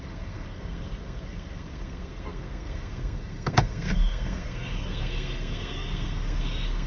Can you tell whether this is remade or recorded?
remade